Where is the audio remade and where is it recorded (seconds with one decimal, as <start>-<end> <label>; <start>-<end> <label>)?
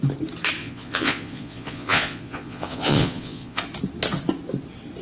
0.0-0.6 recorded; 0.6-3.6 remade; 3.6-5.0 recorded